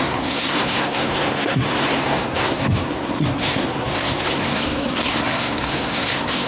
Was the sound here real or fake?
fake